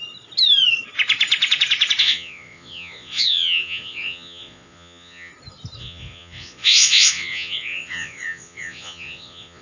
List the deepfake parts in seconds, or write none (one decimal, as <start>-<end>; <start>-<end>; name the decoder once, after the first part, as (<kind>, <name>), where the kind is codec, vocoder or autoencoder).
2.0-5.3 (vocoder, Vocos); 5.8-9.6